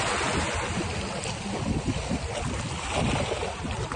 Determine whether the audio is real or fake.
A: real